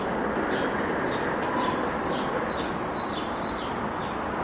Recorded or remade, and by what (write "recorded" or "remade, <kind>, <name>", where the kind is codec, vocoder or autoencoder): recorded